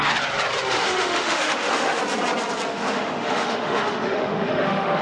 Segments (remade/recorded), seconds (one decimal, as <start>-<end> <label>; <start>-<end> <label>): 0.0-0.8 recorded; 0.8-2.0 remade; 2.0-2.7 recorded; 2.7-5.0 remade